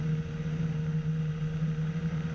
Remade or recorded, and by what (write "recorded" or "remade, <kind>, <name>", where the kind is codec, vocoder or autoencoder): remade, vocoder, BigVGAN v2